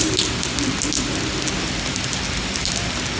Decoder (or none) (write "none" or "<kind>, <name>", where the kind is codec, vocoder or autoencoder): none